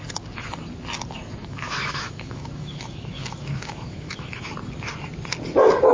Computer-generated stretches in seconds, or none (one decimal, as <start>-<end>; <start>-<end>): 1.4-4.5